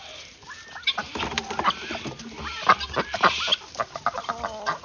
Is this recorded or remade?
recorded